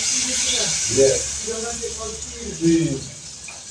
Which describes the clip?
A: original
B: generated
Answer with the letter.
A